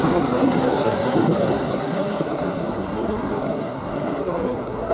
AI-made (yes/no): yes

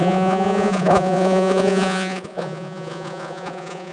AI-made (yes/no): yes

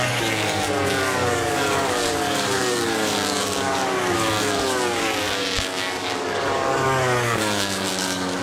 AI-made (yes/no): yes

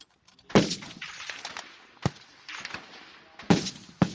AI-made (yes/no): no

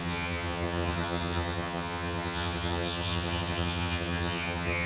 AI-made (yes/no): yes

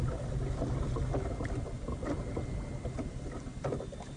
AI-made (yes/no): no